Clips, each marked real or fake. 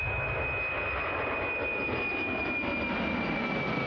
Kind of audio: real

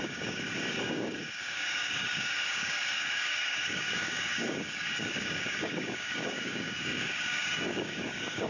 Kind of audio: fake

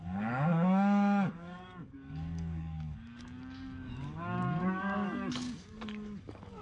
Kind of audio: fake